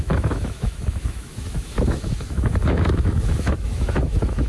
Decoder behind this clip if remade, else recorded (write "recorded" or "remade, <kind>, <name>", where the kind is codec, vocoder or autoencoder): remade, autoencoder, DAC-VAE